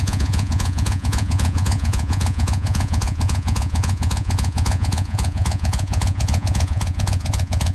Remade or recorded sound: remade